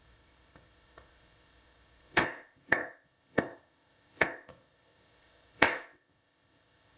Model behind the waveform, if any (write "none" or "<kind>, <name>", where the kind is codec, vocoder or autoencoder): codec, ZipCodec